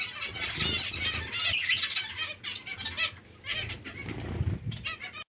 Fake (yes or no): no